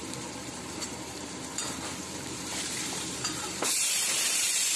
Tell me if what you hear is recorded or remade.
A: remade